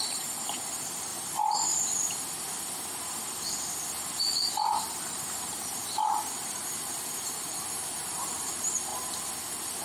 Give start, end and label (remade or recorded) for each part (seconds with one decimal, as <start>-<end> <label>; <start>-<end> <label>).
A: 0.0-1.1 remade; 1.1-5.0 recorded; 5.0-8.9 remade; 8.9-9.8 recorded